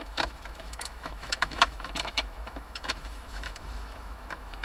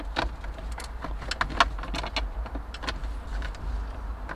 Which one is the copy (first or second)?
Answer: first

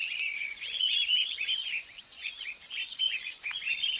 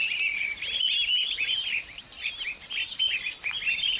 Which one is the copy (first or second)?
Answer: first